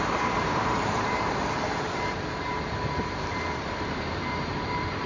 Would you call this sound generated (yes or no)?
yes